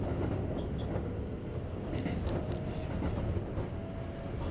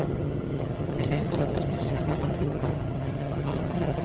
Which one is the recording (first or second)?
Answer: first